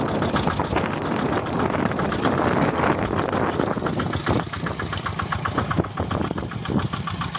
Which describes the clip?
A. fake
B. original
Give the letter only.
B